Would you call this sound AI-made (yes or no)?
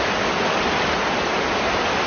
no